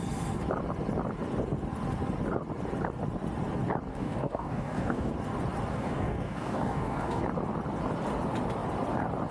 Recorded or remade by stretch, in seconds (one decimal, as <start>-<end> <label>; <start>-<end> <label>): 0.0-3.9 recorded; 3.9-5.1 remade; 5.1-5.7 recorded; 5.7-7.2 remade; 7.2-9.3 recorded